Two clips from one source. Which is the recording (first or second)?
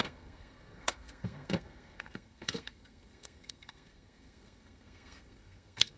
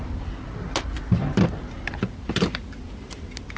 second